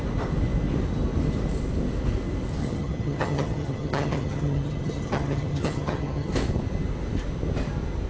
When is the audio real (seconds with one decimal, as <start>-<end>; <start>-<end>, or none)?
0.0-2.6; 6.3-8.1